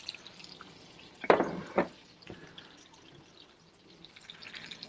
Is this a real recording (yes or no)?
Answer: yes